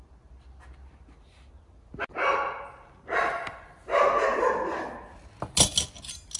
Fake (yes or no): no